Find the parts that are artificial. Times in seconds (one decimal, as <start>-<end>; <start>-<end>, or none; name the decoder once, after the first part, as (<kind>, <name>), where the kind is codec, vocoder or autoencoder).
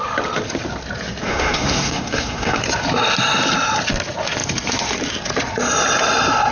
1.3-2.6 (codec, SNAC)